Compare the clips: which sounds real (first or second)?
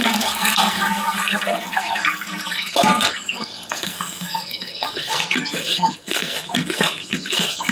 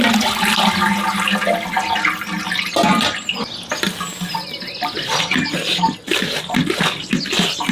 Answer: second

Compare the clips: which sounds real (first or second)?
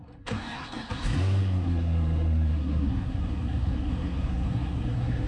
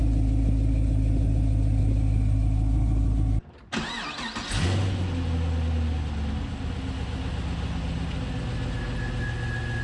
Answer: second